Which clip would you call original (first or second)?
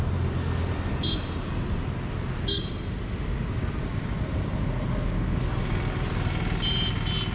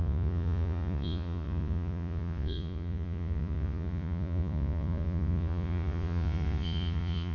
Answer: first